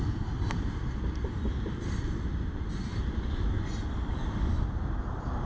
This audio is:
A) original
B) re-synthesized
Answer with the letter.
A